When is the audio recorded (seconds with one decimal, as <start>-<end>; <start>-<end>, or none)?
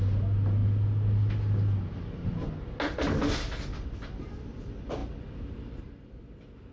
0.0-6.7